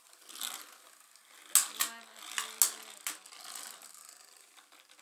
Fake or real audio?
real